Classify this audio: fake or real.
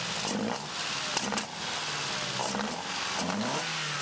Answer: real